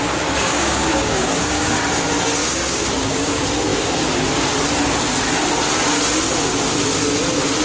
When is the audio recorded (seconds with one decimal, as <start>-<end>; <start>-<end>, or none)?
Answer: 1.7-2.4; 3.3-7.6

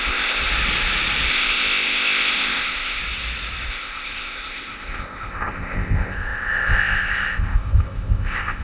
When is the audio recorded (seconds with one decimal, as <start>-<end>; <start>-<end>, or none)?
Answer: 0.4-1.3; 3.0-3.7

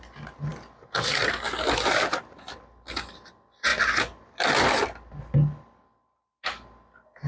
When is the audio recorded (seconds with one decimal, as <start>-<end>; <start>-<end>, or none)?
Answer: 0.0-7.3

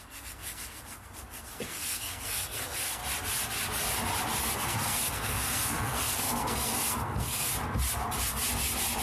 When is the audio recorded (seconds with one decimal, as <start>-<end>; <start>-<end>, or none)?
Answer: 3.0-4.4; 7.5-9.0

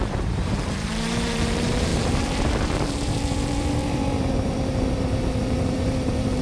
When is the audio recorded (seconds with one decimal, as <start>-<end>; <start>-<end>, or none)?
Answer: none

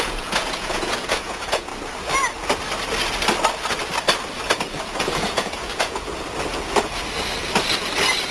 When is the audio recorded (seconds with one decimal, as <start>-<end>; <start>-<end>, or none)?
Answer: 1.7-4.8; 6.0-8.3

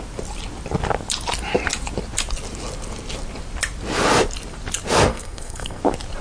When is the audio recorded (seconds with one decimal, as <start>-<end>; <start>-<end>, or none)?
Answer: 0.0-5.1; 5.8-6.2